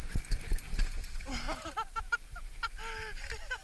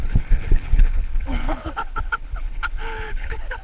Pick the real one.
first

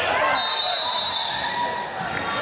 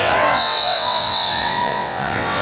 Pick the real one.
first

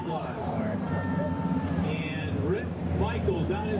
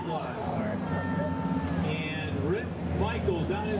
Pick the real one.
second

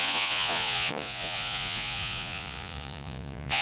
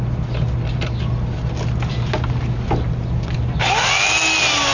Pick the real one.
second